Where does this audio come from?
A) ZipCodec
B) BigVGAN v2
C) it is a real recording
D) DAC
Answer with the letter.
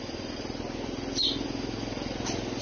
C